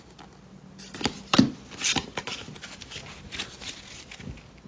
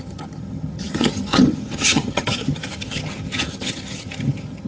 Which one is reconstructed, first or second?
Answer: second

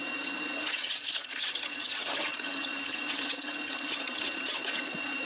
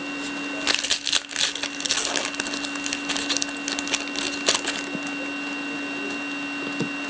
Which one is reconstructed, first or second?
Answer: first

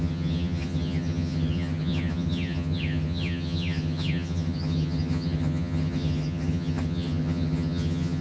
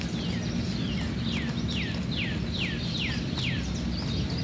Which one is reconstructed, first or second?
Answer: first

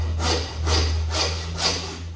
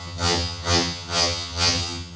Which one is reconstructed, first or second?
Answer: second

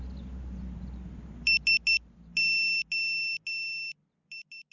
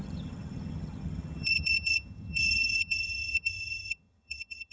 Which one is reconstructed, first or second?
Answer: second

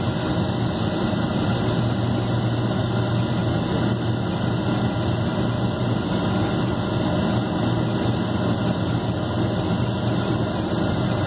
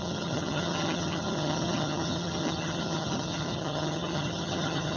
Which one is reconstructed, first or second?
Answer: second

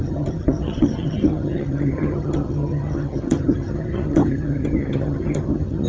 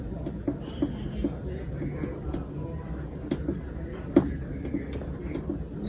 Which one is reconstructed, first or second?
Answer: first